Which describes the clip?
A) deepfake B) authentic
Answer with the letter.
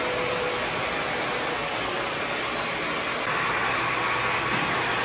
B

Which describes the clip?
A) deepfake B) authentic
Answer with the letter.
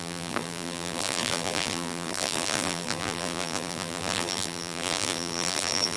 A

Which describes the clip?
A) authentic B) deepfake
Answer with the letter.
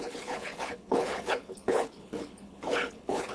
B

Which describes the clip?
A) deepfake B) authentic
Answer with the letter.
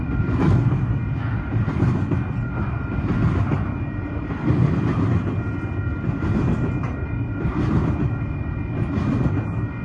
B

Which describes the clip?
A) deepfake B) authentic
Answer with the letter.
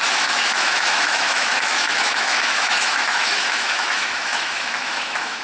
A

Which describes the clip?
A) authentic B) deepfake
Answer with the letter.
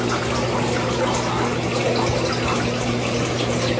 A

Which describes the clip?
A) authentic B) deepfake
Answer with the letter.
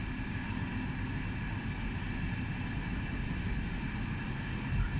A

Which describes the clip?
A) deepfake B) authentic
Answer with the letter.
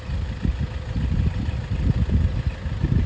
B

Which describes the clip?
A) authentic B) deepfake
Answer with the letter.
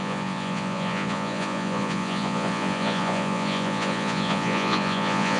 B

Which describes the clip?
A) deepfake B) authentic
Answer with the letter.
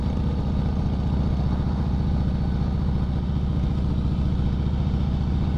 B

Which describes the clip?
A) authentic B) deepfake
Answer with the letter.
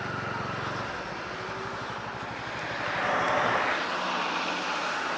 A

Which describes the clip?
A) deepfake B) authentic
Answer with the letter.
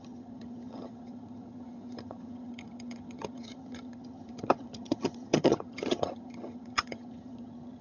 A